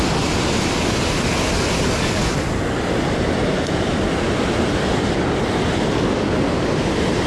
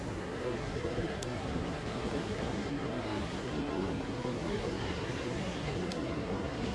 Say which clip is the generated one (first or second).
second